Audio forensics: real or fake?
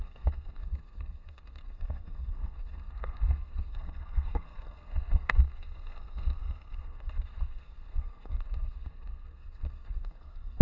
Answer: fake